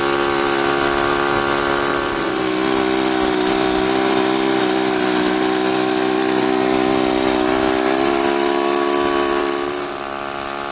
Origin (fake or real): real